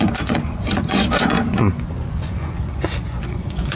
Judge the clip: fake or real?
fake